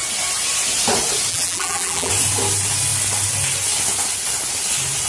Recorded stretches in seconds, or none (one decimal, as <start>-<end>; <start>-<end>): 0.0-1.3; 2.1-5.1